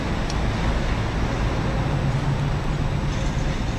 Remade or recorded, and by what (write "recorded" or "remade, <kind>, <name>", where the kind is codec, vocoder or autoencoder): recorded